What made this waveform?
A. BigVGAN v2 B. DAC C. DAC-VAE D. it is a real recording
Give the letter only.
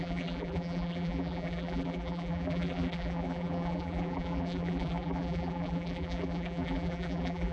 A